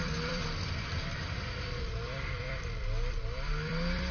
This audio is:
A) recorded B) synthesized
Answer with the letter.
B